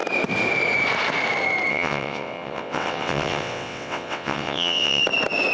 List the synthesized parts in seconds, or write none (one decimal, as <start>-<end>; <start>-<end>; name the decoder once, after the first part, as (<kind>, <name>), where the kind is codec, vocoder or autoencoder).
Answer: 1.7-5.0 (vocoder, WaveNeXt)

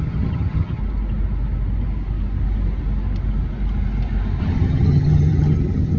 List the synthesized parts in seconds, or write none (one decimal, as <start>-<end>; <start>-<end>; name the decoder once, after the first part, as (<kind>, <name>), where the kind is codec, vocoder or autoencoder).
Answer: 0.0-0.8 (vocoder, HiFi-GAN); 4.4-6.0

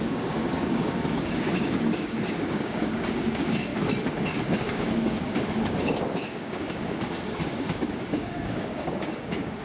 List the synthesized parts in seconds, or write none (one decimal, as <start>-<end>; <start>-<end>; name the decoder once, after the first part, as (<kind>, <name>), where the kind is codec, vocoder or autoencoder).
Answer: 0.0-3.7 (codec, DAC); 4.3-9.6

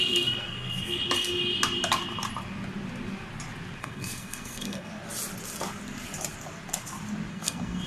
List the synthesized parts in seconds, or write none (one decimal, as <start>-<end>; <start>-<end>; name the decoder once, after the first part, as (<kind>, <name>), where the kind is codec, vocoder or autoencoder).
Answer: 0.0-1.0 (codec, SNAC); 3.8-4.9; 7.3-7.9